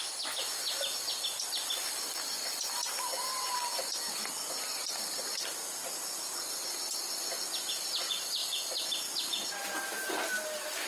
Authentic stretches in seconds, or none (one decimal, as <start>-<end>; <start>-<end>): 0.0-10.9